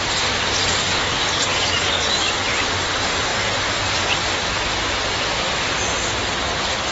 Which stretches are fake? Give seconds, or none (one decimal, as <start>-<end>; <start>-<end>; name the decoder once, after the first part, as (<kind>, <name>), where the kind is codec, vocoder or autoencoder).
0.8-2.3 (codec, DAC)

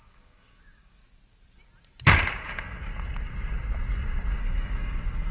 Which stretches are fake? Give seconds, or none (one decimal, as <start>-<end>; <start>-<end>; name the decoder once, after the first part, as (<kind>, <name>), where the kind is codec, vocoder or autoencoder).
0.0-1.0 (codec, DAC); 2.4-2.9; 4.4-5.3

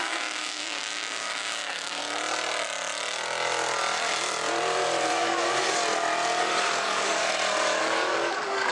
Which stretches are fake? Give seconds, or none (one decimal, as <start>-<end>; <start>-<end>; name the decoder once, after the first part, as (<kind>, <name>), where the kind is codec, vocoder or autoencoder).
0.0-2.0 (codec, DAC); 5.1-5.8; 6.4-7.2; 7.8-8.7